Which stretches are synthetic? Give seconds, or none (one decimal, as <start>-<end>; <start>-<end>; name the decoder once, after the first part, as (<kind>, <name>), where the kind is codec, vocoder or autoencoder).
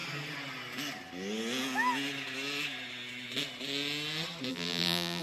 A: 4.5-5.2 (vocoder, BigVGAN v2)